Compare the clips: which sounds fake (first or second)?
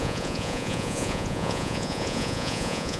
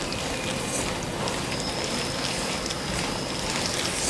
first